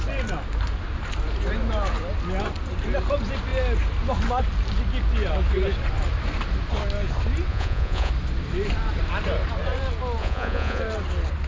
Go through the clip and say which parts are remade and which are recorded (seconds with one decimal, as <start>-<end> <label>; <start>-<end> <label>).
0.0-7.5 recorded; 7.5-8.1 remade; 8.1-10.2 recorded; 10.2-10.8 remade; 10.8-11.5 recorded